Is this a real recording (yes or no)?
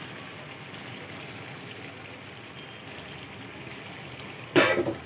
yes